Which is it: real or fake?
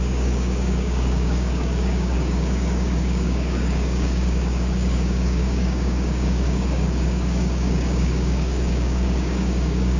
fake